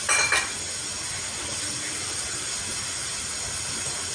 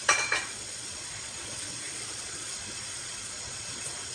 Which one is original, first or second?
first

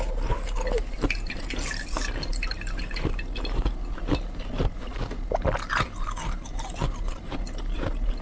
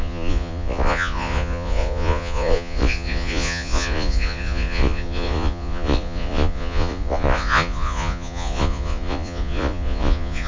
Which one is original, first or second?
first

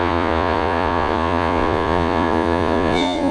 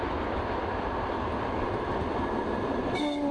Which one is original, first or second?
second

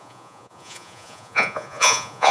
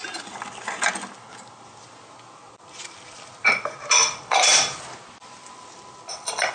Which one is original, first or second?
second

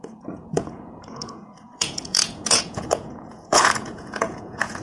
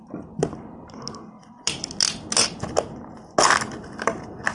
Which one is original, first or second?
second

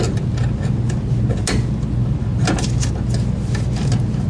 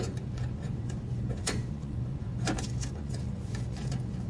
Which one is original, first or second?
first